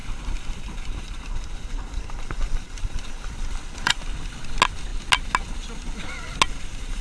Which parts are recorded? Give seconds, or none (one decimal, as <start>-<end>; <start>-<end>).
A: 4.0-7.0